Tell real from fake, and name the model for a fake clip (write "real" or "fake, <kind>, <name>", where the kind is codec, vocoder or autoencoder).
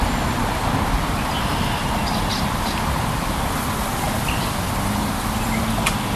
real